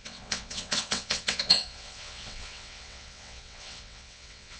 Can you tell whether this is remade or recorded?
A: remade